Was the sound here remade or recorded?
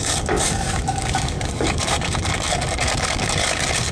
remade